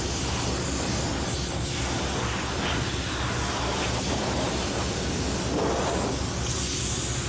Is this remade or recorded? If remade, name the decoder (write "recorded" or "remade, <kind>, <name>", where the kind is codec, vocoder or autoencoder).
recorded